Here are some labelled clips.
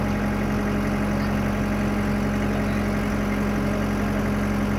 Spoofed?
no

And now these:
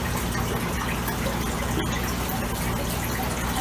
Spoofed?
no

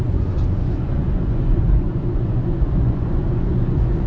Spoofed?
yes